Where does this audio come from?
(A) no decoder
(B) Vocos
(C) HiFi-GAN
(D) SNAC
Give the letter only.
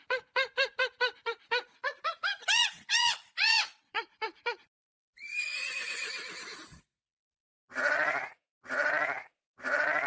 B